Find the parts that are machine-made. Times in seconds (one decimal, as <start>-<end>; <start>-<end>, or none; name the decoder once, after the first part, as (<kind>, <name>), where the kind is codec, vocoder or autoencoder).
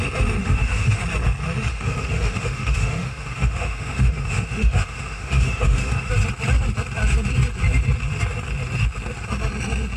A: 0.4-1.0 (autoencoder, DAC-VAE); 1.7-6.1